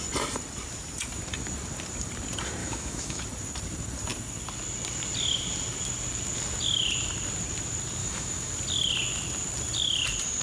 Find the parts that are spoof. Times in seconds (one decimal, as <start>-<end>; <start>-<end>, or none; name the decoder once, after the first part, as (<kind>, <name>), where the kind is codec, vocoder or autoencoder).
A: 2.6-3.2 (autoencoder, DAC-VAE); 8.0-8.5